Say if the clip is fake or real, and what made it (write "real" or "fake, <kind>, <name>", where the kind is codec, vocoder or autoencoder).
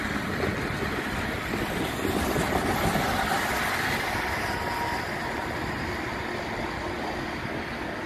real